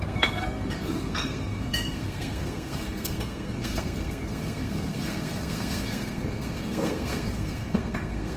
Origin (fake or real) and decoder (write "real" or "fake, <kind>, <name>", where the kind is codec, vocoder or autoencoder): fake, codec, SNAC